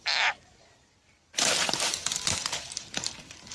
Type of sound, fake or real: fake